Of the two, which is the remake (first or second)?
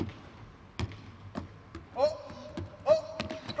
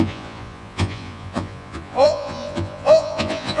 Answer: second